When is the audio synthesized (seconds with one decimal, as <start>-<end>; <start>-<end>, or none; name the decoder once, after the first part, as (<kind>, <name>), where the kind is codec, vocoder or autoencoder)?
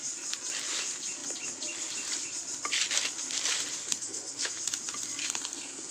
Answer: 3.8-4.5 (codec, SNAC); 5.2-5.9